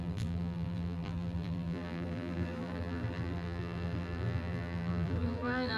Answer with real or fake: fake